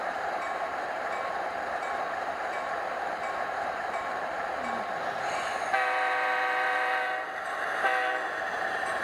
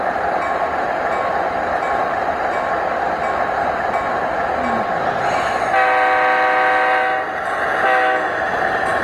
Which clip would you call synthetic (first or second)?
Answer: first